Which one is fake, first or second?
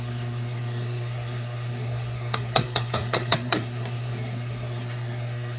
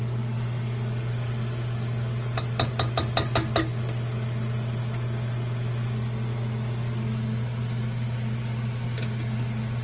first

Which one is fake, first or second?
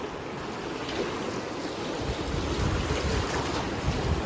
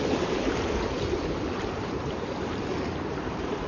second